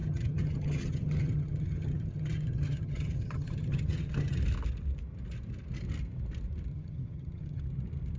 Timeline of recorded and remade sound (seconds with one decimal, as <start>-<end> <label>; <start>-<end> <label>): 0.0-4.4 remade; 4.4-6.7 recorded; 6.7-7.6 remade; 7.6-8.2 recorded